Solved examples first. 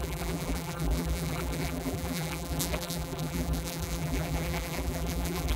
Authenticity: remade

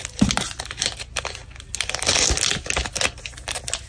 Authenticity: recorded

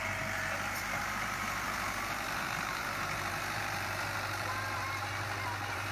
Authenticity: remade